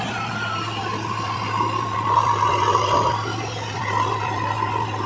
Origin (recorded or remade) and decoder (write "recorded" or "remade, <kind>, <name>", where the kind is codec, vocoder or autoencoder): recorded